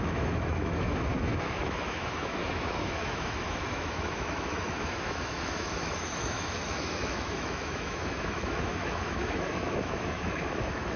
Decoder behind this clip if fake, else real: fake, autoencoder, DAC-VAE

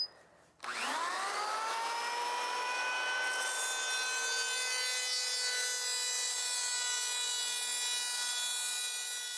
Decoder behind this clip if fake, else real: real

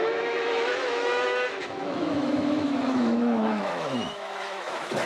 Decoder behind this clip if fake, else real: fake, autoencoder, DAC-VAE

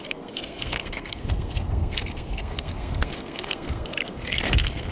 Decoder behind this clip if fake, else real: fake, codec, SNAC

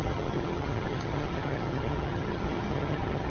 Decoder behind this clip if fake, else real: fake, vocoder, HiFi-GAN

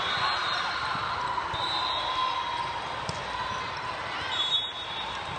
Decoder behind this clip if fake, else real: real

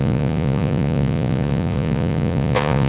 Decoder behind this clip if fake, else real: fake, vocoder, Vocos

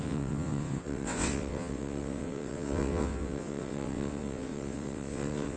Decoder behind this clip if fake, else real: fake, vocoder, WaveNeXt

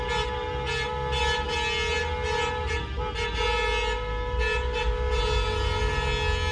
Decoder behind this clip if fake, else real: real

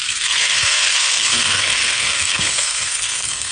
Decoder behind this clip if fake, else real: fake, codec, SNAC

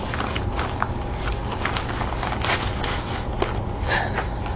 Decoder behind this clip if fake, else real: real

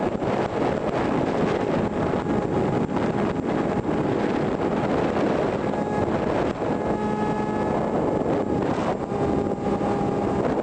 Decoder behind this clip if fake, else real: real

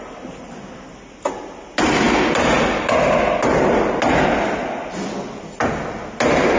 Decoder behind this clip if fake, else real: real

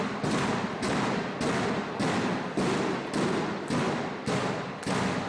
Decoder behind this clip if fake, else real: real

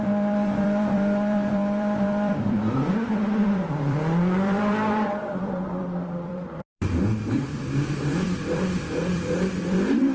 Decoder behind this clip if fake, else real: fake, vocoder, BigVGAN v2